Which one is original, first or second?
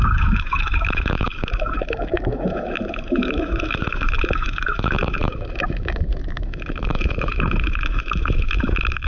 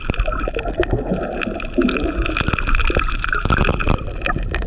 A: second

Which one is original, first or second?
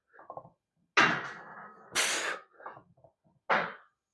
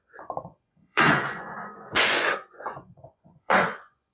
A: first